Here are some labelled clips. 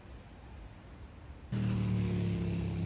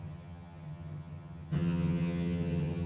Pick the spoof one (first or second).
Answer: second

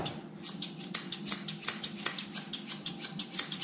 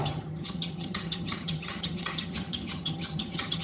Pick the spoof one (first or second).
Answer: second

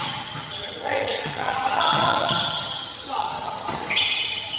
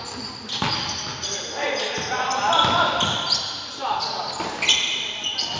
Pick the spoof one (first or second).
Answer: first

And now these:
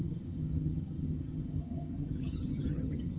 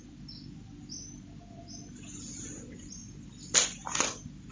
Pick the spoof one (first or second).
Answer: first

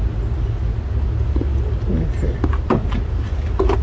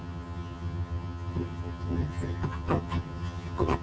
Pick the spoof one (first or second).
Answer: second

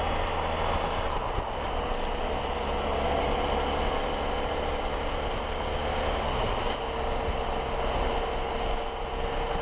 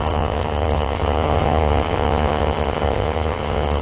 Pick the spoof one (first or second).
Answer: second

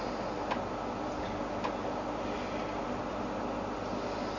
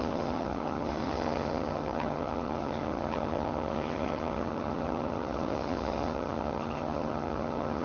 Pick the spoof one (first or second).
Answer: second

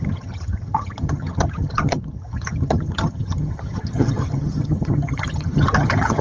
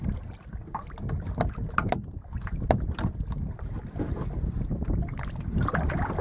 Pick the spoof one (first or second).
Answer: first